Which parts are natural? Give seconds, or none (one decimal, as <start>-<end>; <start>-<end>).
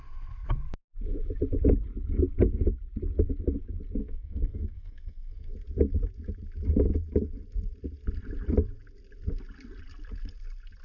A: 0.0-4.0; 5.5-10.8